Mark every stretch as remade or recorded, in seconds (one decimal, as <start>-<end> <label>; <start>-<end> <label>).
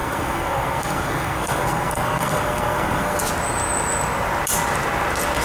0.0-3.2 remade; 3.2-5.4 recorded